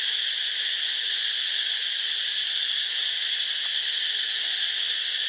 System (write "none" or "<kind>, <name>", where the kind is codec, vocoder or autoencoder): none